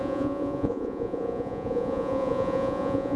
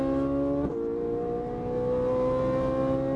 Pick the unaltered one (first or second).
second